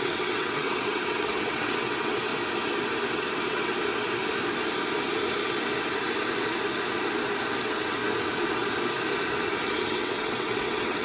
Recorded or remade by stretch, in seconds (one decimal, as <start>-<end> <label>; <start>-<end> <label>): 0.0-2.3 remade; 2.3-3.1 recorded; 3.1-3.7 remade; 3.7-7.6 recorded; 7.6-8.0 remade; 8.0-9.6 recorded; 9.6-11.0 remade